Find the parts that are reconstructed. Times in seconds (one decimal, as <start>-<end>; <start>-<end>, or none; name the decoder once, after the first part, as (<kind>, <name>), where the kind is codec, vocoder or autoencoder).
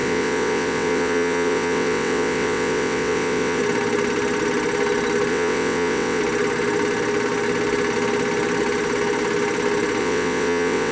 0.0-3.6 (vocoder, WaveNeXt); 5.3-6.2; 10.0-10.9